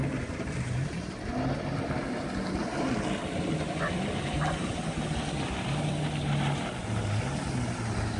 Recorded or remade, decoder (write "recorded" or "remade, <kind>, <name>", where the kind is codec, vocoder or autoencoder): recorded